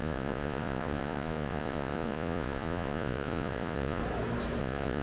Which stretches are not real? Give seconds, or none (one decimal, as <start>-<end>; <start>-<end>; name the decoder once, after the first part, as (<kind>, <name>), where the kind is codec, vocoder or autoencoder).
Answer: 0.0-4.0 (vocoder, Vocos); 4.6-5.0